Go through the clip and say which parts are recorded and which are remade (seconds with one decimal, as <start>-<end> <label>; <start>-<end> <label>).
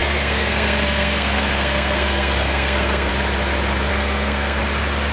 0.0-3.1 remade; 3.1-3.9 recorded; 3.9-4.6 remade; 4.6-5.1 recorded